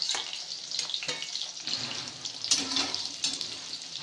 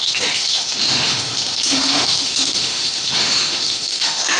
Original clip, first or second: first